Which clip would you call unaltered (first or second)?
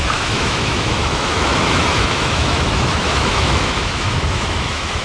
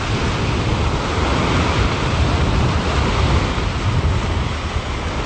second